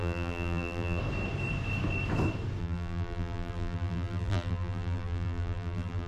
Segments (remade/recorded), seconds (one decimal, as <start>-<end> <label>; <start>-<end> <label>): 0.0-1.0 remade; 1.0-2.6 recorded; 2.6-6.1 remade